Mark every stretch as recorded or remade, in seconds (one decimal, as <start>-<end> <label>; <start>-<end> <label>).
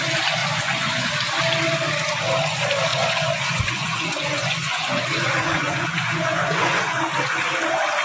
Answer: 0.0-0.4 recorded; 0.4-1.1 remade; 1.1-2.9 recorded; 2.9-7.0 remade; 7.0-8.0 recorded